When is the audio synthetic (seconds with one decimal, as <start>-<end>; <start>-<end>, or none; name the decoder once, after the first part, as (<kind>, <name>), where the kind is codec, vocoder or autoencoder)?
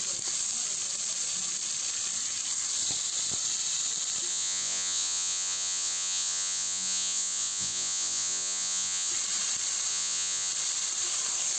4.3-9.1 (vocoder, Vocos); 9.9-10.5